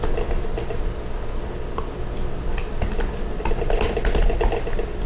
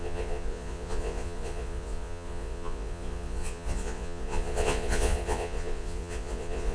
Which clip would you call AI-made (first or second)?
second